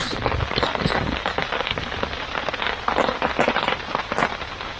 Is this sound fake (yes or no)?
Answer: no